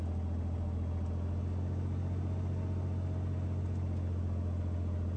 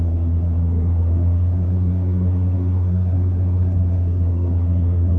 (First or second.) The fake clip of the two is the second